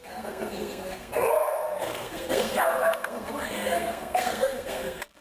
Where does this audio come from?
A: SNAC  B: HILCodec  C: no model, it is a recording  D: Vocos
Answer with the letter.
A